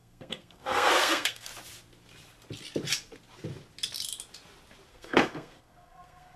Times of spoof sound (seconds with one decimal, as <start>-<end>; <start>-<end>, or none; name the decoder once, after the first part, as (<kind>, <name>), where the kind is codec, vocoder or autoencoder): 0.0-1.5 (codec, SNAC); 4.9-6.4